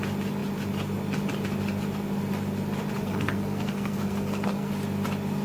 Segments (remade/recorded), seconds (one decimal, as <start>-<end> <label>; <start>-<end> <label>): 0.0-3.0 recorded; 3.0-4.7 remade; 4.7-5.4 recorded